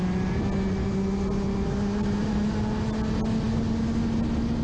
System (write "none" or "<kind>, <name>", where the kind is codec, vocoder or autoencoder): none